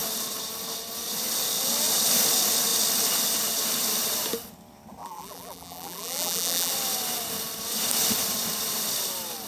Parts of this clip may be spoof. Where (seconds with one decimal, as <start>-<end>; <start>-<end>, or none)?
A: 5.0-6.7